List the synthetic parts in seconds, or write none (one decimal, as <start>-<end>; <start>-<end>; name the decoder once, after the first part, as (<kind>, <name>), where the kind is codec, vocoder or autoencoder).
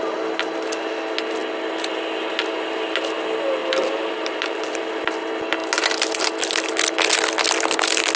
3.6-5.0 (vocoder, BigVGAN v2)